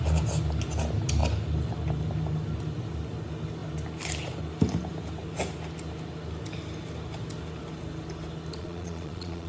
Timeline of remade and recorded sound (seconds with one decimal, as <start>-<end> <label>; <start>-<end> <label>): 0.0-8.6 recorded; 8.6-9.5 remade